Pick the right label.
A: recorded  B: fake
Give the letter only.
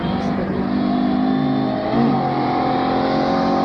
A